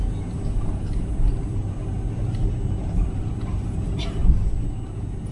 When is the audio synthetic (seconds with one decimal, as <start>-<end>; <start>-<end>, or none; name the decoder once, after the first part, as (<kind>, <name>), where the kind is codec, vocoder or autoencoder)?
none